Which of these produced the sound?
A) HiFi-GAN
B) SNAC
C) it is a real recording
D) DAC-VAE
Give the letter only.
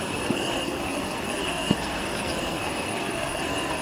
B